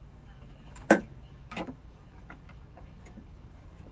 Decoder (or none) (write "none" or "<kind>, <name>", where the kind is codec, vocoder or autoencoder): codec, DAC